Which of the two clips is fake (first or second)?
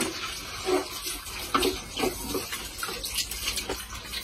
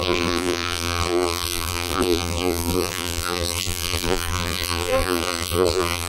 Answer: second